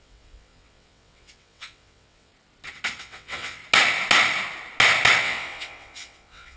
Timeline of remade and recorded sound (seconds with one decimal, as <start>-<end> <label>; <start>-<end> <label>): 0.0-2.3 remade; 2.3-3.0 recorded; 3.0-3.6 remade; 3.6-5.2 recorded; 5.2-6.6 remade